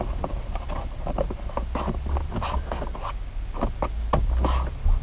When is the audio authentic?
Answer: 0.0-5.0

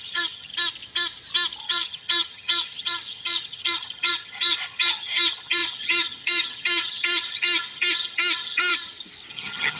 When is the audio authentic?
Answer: 0.5-1.6; 8.7-9.3

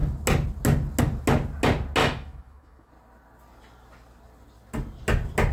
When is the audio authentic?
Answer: 0.0-2.0; 2.9-5.5

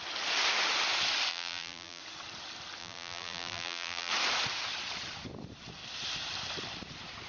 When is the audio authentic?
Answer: 0.0-1.3; 2.0-2.8; 4.1-7.3

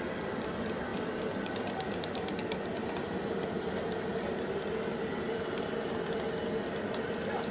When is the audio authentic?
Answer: 0.0-7.5

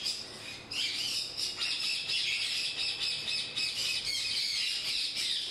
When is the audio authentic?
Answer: 0.0-5.5

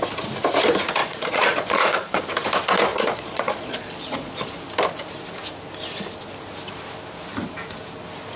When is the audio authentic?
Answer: 0.0-1.0; 2.2-2.9; 4.3-8.4

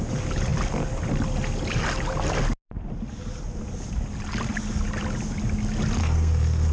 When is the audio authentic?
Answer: 0.0-6.0